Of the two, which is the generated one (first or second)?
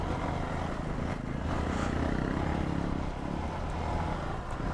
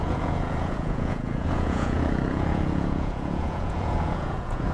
second